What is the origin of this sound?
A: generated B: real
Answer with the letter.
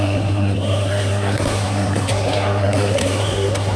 A